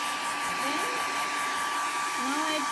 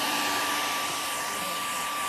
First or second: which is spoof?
second